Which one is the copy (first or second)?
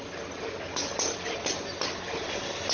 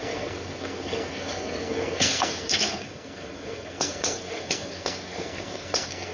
second